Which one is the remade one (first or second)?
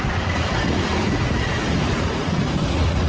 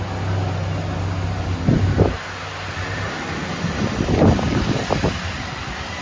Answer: first